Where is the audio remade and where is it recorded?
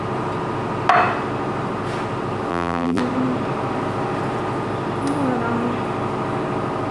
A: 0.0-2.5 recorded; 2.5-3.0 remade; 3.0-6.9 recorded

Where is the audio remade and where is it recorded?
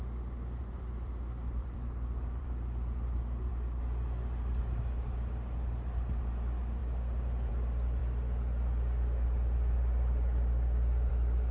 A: 0.0-0.6 recorded; 0.6-3.5 remade; 3.5-11.5 recorded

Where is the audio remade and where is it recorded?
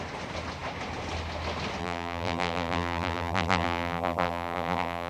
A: 0.0-1.8 recorded; 1.8-5.1 remade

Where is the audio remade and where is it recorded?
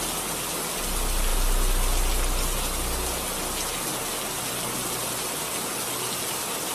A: 0.0-6.7 recorded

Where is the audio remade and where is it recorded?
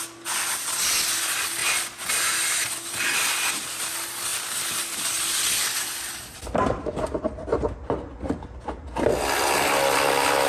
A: 0.0-4.3 recorded; 4.3-5.5 remade; 5.5-10.5 recorded